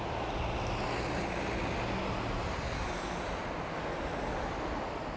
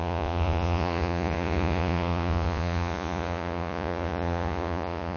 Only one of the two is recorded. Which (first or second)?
first